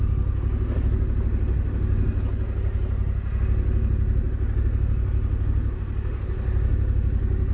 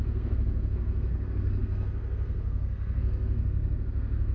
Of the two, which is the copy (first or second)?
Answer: second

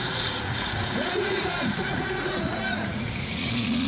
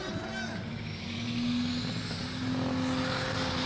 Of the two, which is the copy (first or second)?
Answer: first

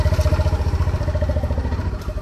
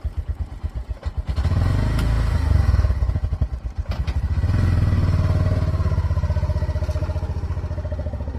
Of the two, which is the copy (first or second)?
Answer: first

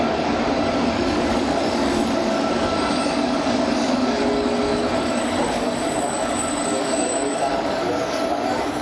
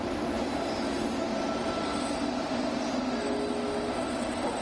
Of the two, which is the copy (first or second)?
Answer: first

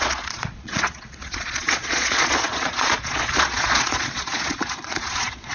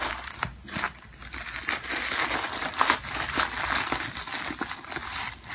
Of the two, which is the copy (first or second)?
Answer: first